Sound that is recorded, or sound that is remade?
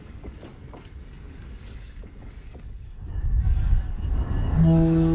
remade